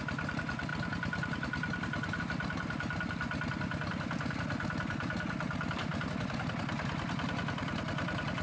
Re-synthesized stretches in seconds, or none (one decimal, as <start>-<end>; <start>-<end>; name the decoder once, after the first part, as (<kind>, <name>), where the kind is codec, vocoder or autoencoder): none